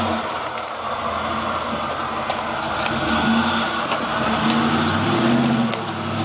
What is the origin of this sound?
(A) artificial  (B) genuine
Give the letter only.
B